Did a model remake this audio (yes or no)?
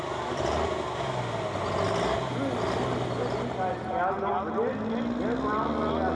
no